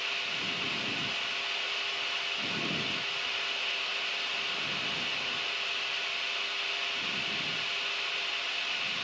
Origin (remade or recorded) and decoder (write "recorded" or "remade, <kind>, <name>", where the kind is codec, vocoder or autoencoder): recorded